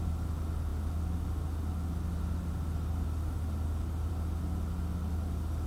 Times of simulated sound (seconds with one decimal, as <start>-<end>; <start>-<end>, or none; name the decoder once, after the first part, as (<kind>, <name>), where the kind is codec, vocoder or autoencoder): none